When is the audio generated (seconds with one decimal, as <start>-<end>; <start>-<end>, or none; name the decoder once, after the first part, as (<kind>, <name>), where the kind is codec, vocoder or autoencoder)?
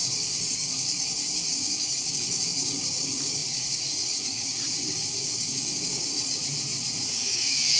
0.0-6.4 (codec, DAC); 7.1-7.8